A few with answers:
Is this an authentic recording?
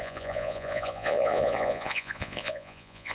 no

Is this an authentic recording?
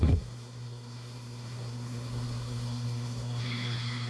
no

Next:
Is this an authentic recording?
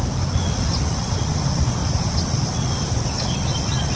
yes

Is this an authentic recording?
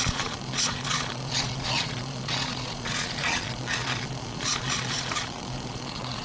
no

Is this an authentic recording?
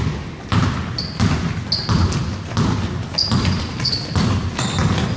yes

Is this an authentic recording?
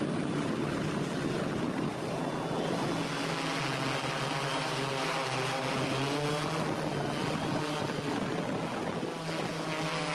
yes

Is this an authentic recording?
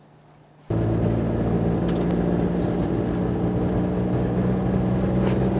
yes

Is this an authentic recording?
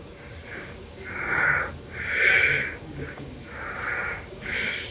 no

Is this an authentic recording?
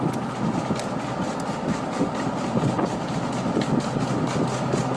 yes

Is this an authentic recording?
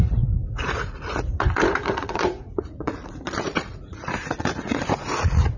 no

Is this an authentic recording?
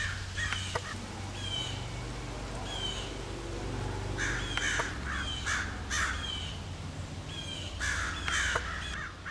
yes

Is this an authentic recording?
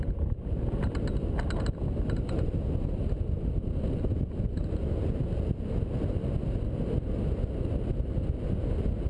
yes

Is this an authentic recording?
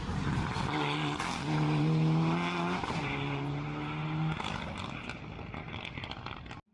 yes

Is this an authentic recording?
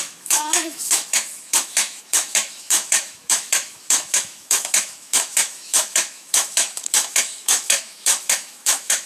no